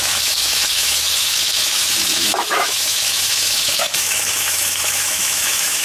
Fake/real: fake